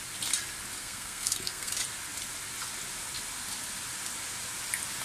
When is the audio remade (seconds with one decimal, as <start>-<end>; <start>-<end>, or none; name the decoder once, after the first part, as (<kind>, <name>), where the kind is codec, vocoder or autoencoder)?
0.8-1.7 (codec, SNAC)